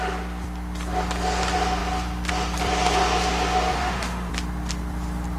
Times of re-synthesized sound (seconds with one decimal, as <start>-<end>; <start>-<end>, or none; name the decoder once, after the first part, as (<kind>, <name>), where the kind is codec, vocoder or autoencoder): 3.7-4.3 (autoencoder, DAC-VAE)